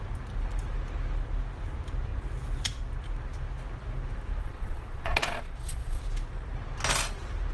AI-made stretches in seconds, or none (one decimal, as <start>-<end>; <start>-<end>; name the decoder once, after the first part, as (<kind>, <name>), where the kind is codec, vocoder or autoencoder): 4.4-6.0 (vocoder, Vocos)

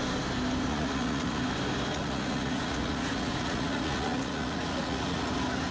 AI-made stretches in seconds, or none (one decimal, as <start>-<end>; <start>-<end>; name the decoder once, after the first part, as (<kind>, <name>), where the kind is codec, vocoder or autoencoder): 0.7-1.4 (vocoder, Vocos); 1.9-5.3

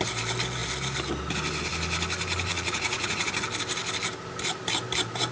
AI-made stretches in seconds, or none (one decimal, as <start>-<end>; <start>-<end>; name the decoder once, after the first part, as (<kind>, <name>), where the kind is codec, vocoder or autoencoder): 2.5-3.3 (vocoder, Vocos)

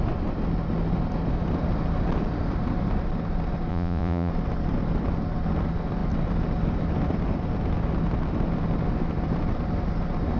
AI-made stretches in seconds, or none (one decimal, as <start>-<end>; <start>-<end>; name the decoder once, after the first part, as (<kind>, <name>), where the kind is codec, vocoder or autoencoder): 3.7-4.3 (vocoder, Vocos)

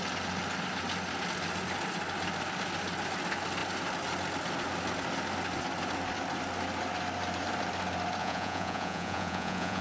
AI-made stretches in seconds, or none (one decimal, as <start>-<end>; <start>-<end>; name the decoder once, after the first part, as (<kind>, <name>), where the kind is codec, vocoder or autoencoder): 8.2-9.8 (vocoder, Vocos)

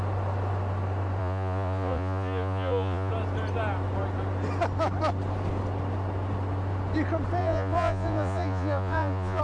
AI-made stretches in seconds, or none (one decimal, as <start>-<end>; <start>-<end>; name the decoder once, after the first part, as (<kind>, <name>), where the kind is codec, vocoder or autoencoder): 1.2-3.1 (vocoder, Vocos); 7.4-9.4

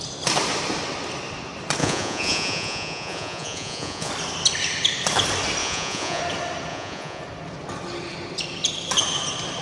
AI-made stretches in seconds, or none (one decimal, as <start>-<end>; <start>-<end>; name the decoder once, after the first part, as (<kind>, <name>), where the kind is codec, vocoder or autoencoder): 1.8-4.1 (vocoder, Vocos); 5.6-6.2; 6.7-7.2